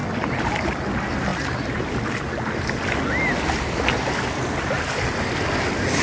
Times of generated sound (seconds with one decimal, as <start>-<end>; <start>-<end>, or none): none